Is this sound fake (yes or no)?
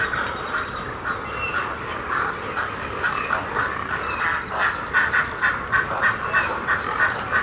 no